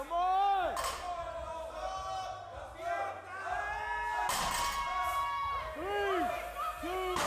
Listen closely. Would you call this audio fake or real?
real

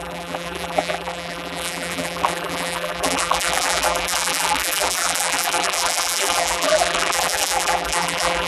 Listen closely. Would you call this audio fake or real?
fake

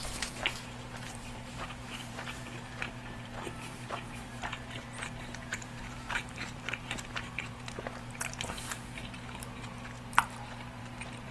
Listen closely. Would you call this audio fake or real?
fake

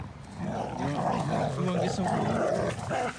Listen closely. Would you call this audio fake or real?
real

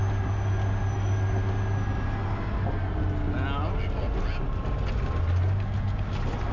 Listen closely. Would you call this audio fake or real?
real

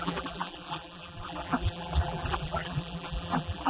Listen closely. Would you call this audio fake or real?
fake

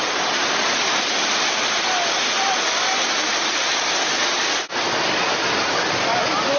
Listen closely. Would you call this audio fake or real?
real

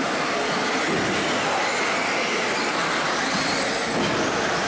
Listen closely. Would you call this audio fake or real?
real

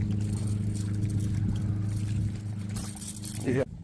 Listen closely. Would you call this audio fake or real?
real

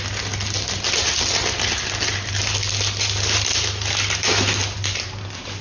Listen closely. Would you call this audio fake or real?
real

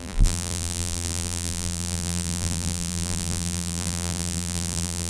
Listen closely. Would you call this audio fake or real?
fake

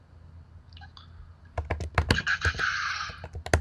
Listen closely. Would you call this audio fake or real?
real